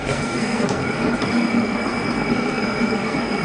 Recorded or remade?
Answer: remade